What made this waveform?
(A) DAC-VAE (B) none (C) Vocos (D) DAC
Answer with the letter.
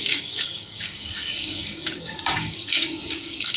D